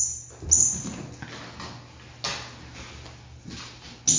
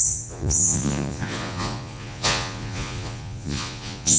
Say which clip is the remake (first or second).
second